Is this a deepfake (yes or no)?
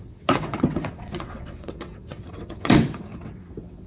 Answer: yes